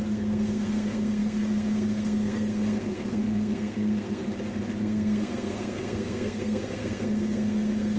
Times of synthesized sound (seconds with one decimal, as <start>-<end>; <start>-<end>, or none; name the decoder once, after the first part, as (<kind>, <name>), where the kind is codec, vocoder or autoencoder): 0.0-4.2 (codec, SNAC); 4.8-8.0